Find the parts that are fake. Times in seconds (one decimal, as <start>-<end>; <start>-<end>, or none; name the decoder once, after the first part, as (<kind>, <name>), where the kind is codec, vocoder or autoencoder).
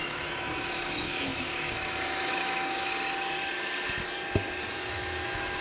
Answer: 0.0-2.9 (autoencoder, DAC-VAE); 4.7-5.6